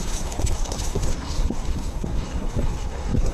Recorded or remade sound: remade